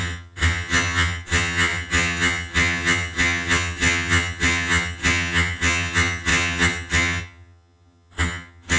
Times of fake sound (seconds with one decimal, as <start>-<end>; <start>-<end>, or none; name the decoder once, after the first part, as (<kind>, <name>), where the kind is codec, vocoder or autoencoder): 0.0-8.8 (vocoder, HiFi-GAN)

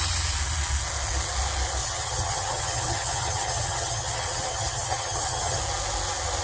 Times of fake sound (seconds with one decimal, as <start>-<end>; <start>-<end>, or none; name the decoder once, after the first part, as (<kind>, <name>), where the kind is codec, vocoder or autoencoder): 1.8-5.6 (vocoder, HiFi-GAN)

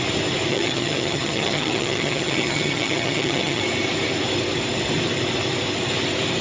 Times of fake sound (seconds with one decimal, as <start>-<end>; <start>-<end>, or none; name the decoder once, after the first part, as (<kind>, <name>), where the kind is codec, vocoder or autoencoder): 0.5-3.6 (vocoder, HiFi-GAN)

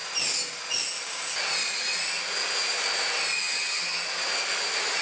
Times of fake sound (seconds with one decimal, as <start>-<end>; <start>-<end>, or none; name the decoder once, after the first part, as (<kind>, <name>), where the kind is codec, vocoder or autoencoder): 3.4-4.0 (vocoder, HiFi-GAN)

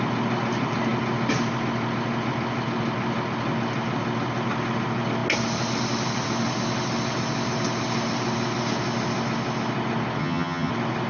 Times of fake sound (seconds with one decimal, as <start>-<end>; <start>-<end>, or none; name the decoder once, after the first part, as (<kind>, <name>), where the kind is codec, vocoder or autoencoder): 10.2-10.7 (vocoder, HiFi-GAN)